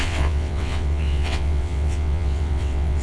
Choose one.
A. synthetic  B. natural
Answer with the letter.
A